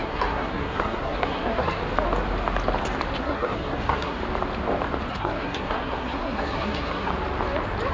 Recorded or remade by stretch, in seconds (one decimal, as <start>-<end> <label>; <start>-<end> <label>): 0.0-1.8 remade; 1.8-3.2 recorded; 3.2-4.2 remade; 4.2-5.1 recorded; 5.1-7.1 remade; 7.1-7.9 recorded